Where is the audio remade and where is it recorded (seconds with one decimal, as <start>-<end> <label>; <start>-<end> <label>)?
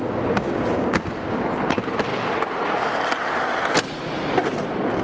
0.0-1.4 remade; 1.4-5.0 recorded